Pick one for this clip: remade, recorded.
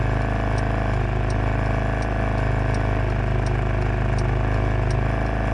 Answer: recorded